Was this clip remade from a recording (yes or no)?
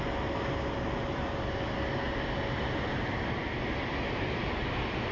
no